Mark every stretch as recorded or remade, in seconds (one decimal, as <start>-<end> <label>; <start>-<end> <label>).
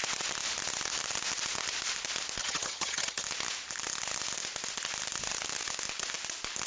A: 0.0-2.4 recorded; 2.4-3.2 remade; 3.2-6.7 recorded